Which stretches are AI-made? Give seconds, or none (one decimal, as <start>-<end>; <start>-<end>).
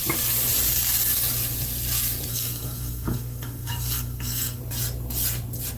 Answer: 2.3-4.6